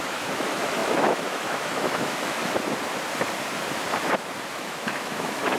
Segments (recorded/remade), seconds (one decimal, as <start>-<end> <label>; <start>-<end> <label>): 0.0-2.4 remade; 2.4-4.5 recorded; 4.5-5.6 remade